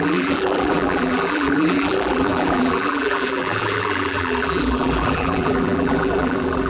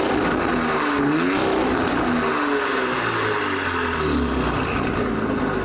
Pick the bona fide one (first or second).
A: second